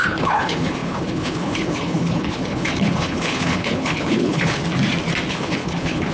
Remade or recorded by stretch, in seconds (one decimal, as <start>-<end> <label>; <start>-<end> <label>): 0.0-4.6 remade; 4.6-5.3 recorded; 5.3-6.1 remade